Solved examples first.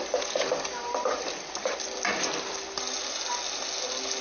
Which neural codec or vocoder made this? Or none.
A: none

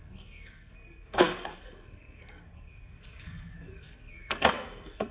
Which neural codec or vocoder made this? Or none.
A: codec, SNAC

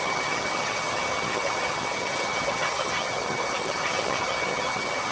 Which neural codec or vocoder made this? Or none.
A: vocoder, HiFi-GAN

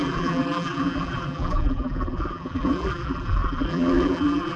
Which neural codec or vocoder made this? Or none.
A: vocoder, BigVGAN v2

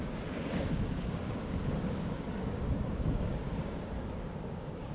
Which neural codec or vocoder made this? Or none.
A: codec, DAC